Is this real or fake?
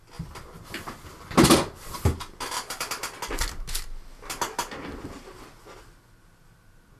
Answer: real